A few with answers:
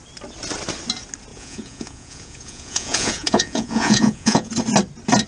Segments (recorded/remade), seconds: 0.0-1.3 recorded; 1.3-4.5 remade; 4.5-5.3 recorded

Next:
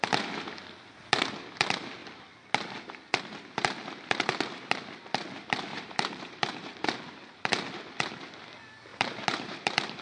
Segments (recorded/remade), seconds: 0.0-5.7 recorded; 5.7-7.0 remade; 7.0-8.9 recorded; 8.9-10.0 remade